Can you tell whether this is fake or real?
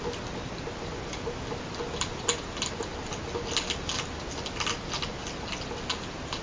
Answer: real